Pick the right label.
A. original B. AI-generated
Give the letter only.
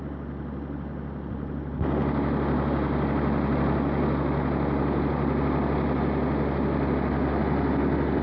A